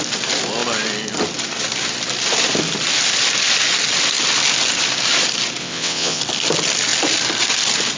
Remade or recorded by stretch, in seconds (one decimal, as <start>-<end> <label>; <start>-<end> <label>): 0.0-5.6 recorded; 5.6-6.2 remade; 6.2-8.0 recorded